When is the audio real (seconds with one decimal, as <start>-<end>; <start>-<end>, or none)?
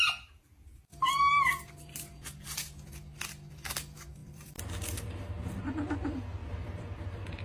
0.0-4.2; 5.6-6.4